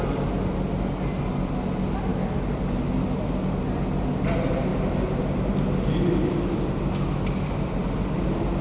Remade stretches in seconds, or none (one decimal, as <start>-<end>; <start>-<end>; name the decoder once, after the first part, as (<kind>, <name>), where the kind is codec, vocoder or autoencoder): none